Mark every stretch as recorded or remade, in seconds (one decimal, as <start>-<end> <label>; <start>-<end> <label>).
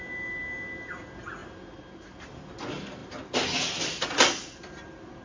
0.0-5.2 recorded